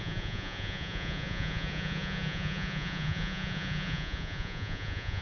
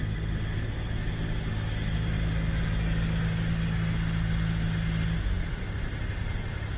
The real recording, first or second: second